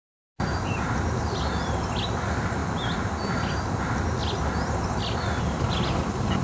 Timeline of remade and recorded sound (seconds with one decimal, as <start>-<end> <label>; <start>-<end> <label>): 0.0-6.4 recorded